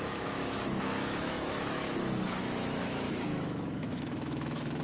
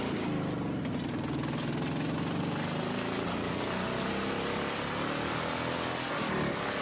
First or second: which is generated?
first